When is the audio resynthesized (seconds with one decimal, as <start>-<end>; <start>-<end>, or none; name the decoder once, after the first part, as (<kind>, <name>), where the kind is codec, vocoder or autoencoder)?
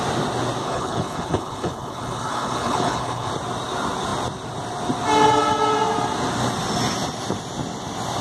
0.6-3.3 (codec, HILCodec)